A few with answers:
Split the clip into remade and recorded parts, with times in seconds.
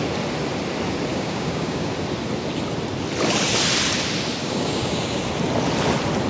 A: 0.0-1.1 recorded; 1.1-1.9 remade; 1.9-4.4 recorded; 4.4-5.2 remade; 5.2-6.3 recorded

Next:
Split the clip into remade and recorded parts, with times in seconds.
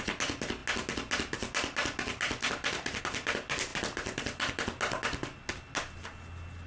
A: 0.0-6.7 recorded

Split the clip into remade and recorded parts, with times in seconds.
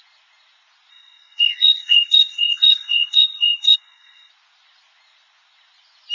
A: 0.0-0.9 recorded; 0.9-4.3 remade; 4.3-6.1 recorded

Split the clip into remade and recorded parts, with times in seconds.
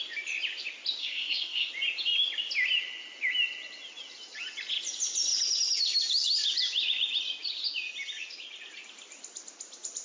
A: 0.0-1.0 recorded; 1.0-1.7 remade; 1.7-10.0 recorded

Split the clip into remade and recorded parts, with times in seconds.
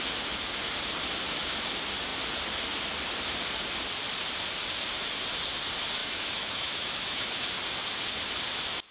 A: 0.0-6.0 recorded; 6.0-7.4 remade; 7.4-8.9 recorded